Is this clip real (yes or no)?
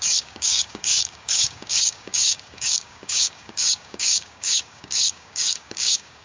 no